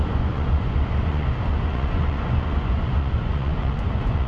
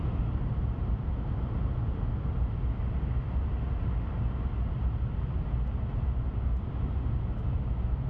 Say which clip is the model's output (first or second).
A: first